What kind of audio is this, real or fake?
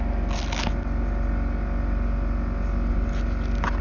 real